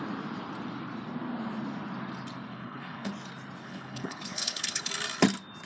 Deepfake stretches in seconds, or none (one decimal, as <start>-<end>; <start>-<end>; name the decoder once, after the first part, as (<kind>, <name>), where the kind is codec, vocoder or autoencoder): 2.5-3.1 (codec, HILCodec); 3.6-4.9